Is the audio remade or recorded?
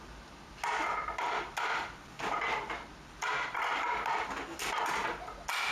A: recorded